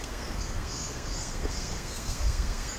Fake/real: fake